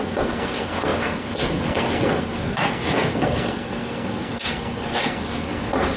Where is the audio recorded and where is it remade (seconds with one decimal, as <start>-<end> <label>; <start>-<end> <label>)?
0.0-6.0 remade